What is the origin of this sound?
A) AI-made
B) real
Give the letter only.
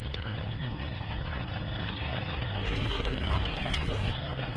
A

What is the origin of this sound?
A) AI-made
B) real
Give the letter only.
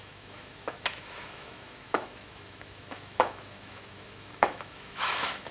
A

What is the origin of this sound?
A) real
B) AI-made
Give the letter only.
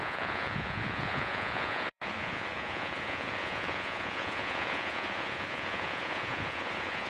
B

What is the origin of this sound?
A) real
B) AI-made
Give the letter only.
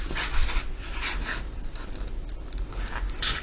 A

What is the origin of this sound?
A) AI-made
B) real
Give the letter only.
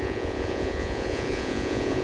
A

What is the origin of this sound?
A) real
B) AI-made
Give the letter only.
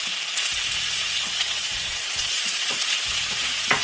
B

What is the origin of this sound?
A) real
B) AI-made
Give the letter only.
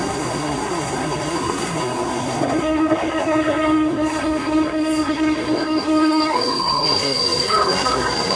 B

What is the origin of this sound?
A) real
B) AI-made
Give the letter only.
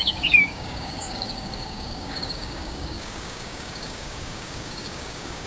B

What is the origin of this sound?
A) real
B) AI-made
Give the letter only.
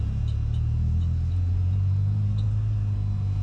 A